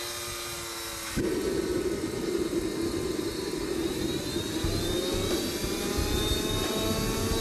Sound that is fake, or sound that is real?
real